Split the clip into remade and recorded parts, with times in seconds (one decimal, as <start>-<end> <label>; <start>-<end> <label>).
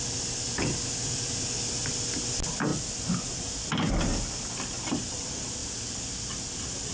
0.0-6.9 recorded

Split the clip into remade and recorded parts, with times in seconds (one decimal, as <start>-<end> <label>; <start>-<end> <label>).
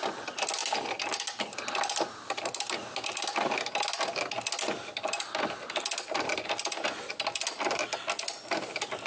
0.0-9.1 recorded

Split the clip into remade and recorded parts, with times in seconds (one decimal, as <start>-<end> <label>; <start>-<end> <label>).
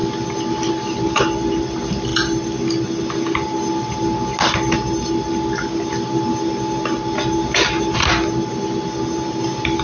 0.0-9.8 recorded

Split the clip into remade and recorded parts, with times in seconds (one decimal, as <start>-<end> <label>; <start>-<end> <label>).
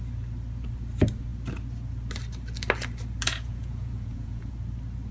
0.0-3.2 recorded; 3.2-4.5 remade; 4.5-5.1 recorded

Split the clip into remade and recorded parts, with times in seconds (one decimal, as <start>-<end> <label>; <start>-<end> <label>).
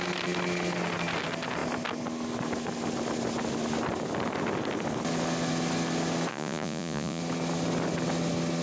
0.0-6.3 recorded; 6.3-7.2 remade; 7.2-8.6 recorded